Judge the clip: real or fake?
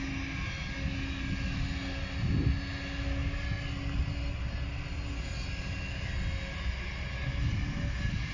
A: real